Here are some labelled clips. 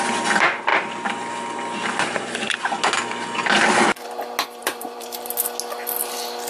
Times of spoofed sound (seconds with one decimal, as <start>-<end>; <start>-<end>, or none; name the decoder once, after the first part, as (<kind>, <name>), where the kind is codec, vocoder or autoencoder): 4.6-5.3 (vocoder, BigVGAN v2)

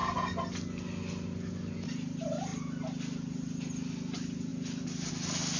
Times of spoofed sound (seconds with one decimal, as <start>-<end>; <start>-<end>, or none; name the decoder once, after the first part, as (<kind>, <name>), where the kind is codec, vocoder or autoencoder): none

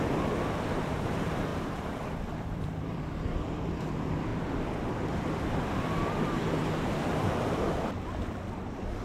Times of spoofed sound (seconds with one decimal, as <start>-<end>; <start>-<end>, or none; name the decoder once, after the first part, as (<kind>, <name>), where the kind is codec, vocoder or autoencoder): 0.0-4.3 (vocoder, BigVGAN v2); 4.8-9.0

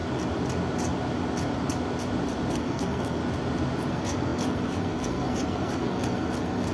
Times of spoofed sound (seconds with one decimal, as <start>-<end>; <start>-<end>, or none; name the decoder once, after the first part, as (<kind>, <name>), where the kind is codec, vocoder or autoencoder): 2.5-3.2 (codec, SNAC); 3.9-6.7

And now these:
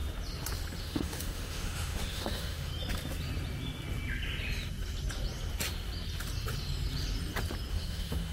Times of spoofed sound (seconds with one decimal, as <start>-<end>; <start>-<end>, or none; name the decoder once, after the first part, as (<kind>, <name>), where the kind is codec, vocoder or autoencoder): 0.8-2.7 (autoencoder, DAC-VAE); 7.7-8.3